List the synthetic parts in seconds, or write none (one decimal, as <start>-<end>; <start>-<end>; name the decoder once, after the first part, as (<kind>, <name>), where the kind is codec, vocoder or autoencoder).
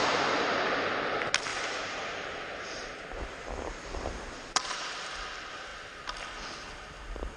1.5-4.8 (vocoder, BigVGAN v2)